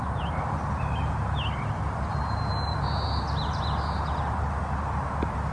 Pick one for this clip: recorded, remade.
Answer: recorded